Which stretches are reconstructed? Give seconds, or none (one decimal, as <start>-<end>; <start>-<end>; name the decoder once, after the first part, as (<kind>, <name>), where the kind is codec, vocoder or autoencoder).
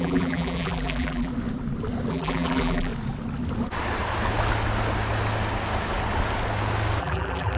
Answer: 0.0-1.3 (vocoder, BigVGAN v2); 2.1-2.9; 7.0-7.6